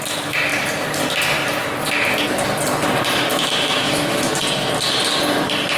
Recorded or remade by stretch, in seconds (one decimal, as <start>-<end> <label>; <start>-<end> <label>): 0.0-3.3 recorded; 3.3-4.3 remade; 4.3-5.8 recorded